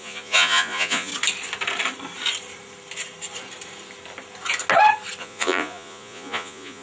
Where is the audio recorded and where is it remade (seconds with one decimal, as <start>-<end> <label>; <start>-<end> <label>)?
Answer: 0.0-1.1 remade; 1.1-5.2 recorded; 5.2-6.8 remade